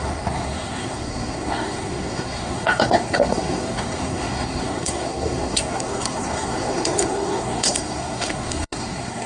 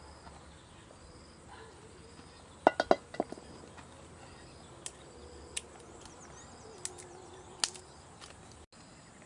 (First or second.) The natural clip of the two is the second